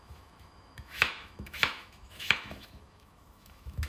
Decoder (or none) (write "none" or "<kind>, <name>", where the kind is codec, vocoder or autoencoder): autoencoder, DAC-VAE